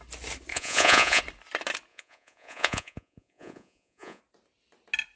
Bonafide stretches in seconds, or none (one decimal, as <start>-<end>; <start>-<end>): 0.0-0.5; 1.2-1.9; 4.2-5.2